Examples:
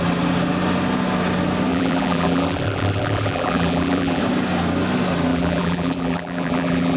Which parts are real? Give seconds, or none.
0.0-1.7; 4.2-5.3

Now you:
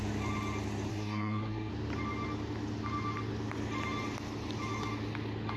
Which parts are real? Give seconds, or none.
0.0-0.9; 1.7-5.6

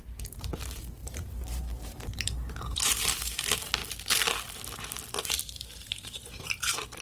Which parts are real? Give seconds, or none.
3.8-5.1

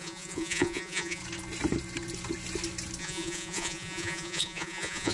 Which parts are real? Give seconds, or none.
1.2-3.0

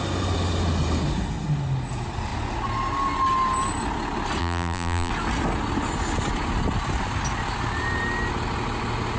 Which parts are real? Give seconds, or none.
0.0-4.4; 5.1-9.2

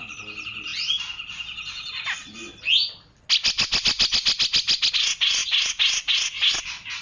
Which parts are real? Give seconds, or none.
0.0-7.0